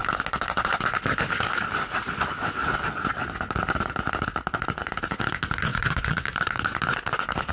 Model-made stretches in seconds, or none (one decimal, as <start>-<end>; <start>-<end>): 5.7-6.8

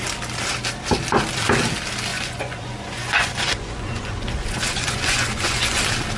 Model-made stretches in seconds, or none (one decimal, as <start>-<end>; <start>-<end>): 2.1-5.8

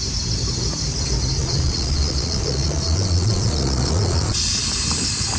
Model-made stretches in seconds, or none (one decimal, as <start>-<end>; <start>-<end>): 1.4-4.6

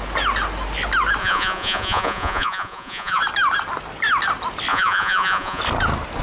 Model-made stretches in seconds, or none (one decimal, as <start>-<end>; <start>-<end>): 1.2-3.2; 4.7-5.6

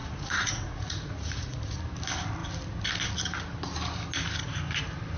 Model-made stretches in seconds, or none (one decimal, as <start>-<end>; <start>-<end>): 0.0-1.8